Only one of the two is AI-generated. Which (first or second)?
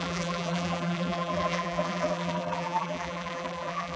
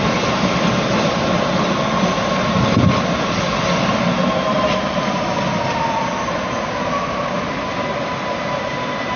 first